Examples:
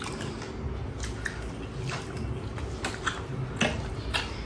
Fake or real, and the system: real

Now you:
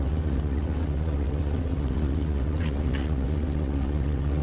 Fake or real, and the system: fake, vocoder, WaveNeXt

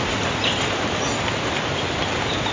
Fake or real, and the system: real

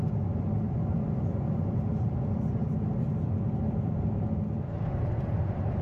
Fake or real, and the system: real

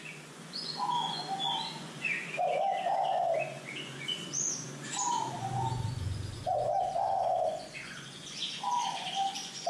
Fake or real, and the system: fake, vocoder, Vocos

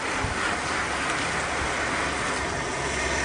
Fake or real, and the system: real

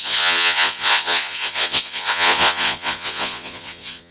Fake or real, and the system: fake, vocoder, Vocos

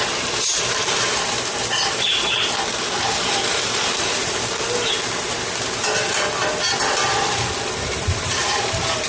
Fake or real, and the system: real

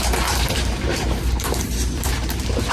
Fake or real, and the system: fake, vocoder, BigVGAN v2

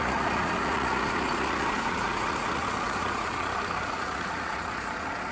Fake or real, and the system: fake, vocoder, Vocos